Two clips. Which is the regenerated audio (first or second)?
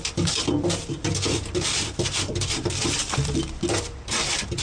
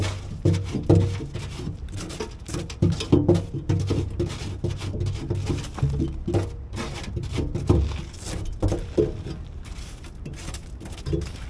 first